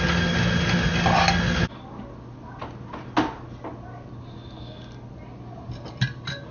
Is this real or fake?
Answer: real